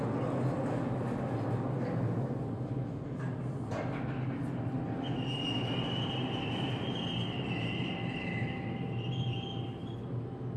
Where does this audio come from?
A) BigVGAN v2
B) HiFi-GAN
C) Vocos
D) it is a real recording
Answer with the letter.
D